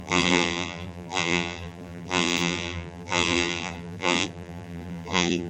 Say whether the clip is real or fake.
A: fake